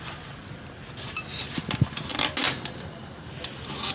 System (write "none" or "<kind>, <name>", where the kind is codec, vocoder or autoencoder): none